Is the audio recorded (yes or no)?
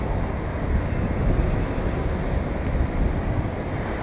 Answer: yes